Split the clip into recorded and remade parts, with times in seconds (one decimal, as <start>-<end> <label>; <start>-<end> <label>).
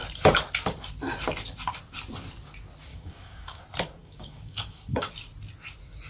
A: 0.0-2.9 recorded; 2.9-3.6 remade; 3.6-4.0 recorded; 4.0-5.1 remade; 5.1-6.1 recorded